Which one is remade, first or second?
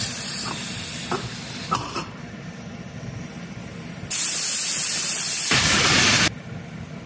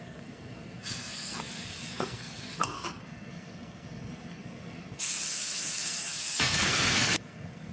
second